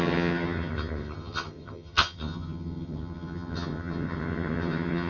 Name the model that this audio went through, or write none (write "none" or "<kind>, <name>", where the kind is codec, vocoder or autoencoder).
vocoder, HiFi-GAN